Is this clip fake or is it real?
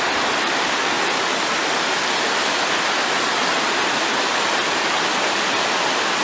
real